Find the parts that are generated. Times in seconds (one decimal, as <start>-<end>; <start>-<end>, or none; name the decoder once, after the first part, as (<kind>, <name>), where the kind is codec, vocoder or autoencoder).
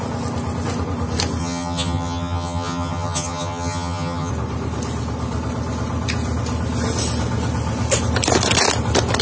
1.4-4.3 (vocoder, HiFi-GAN)